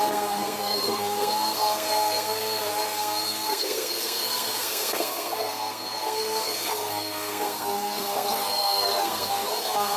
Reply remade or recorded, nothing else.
remade